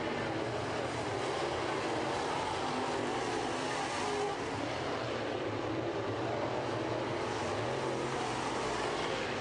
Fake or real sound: real